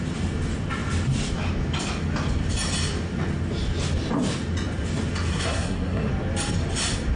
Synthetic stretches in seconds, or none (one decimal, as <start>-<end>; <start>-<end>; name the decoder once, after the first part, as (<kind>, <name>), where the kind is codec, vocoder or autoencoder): 5.3-6.1 (codec, SNAC)